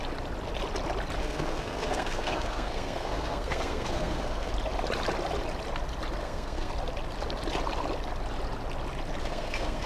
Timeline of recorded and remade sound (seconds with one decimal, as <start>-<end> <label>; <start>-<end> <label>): 0.0-1.2 recorded; 1.2-4.5 remade; 4.5-6.2 recorded; 6.2-6.7 remade; 6.7-9.2 recorded; 9.2-9.9 remade